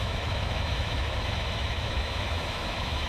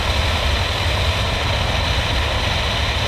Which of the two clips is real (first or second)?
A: second